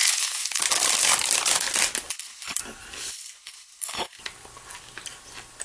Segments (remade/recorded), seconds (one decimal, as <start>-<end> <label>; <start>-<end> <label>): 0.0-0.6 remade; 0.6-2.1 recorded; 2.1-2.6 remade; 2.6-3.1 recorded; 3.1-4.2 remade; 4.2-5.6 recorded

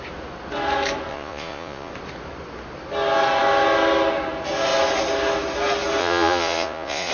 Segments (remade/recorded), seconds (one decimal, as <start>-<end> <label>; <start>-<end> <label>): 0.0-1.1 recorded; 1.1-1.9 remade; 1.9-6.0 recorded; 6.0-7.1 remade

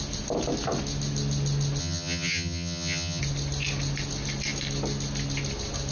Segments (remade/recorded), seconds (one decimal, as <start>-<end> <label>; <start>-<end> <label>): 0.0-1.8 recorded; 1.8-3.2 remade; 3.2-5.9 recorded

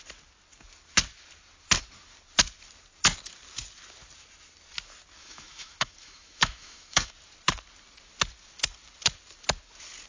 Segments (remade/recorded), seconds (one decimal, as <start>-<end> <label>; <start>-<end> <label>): 0.0-5.2 recorded; 5.2-7.1 remade; 7.1-10.1 recorded

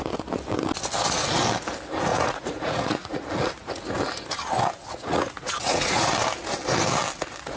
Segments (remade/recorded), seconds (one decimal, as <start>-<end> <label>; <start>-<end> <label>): 0.0-2.1 recorded; 2.1-3.3 remade; 3.3-4.8 recorded; 4.8-6.1 remade; 6.1-7.6 recorded

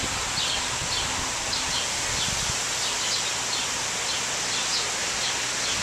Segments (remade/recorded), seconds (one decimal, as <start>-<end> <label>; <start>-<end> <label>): 0.0-5.8 recorded